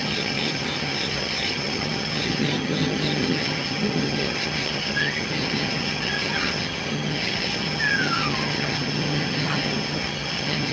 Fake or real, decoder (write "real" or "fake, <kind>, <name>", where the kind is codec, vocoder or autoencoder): fake, vocoder, HiFi-GAN